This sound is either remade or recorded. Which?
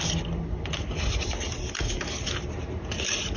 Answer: recorded